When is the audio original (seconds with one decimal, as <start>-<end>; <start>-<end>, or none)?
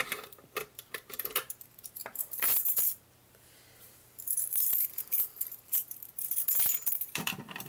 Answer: none